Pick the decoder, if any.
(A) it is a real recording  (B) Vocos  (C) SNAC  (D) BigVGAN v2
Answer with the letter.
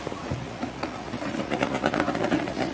B